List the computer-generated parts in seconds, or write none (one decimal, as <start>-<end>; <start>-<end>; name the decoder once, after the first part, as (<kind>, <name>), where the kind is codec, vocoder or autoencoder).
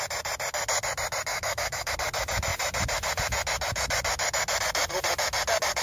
1.3-1.9 (autoencoder, DAC-VAE)